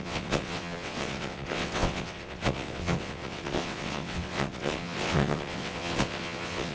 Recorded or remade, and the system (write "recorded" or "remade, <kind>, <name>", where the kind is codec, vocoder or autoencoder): remade, vocoder, WaveNeXt